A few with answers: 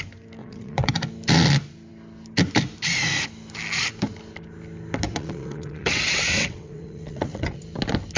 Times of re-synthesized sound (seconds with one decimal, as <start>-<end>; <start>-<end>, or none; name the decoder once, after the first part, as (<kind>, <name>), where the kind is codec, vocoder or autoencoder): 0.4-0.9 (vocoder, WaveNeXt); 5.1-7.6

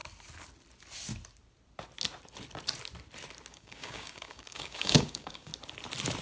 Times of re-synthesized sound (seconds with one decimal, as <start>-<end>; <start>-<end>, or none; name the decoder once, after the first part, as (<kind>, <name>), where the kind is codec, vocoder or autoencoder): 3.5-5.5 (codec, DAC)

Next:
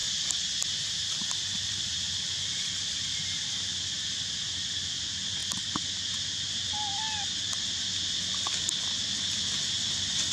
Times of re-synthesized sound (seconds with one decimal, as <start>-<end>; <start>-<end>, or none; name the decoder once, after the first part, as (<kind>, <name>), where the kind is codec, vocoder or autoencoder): 3.1-3.8 (vocoder, BigVGAN v2)